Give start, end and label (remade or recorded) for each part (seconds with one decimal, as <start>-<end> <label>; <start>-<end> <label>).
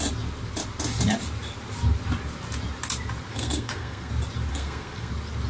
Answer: 0.0-3.3 recorded; 3.3-4.1 remade; 4.1-4.5 recorded; 4.5-5.1 remade; 5.1-5.5 recorded